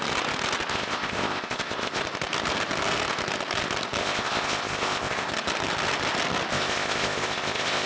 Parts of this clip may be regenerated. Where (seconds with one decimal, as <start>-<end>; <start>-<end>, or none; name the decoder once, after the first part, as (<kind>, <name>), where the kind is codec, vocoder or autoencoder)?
0.7-2.0 (codec, ZipCodec); 4.0-5.3; 6.5-7.9